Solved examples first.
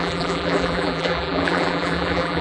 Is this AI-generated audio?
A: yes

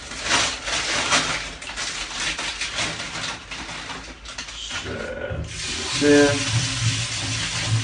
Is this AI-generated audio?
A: no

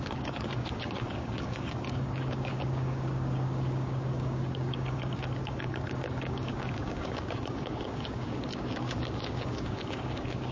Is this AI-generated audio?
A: yes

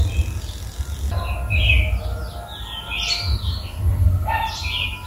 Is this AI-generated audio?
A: no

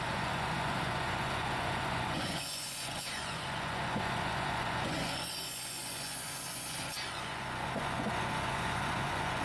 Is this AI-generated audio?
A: yes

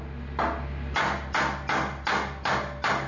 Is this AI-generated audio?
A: no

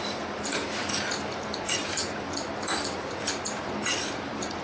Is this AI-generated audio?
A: yes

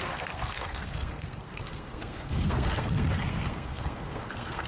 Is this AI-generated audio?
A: yes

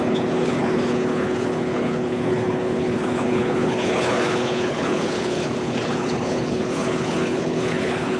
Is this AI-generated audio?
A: yes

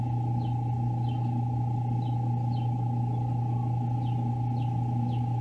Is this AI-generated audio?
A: no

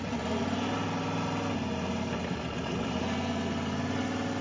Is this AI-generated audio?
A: no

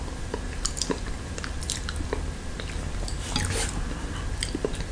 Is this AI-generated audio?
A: no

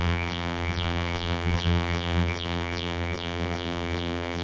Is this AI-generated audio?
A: yes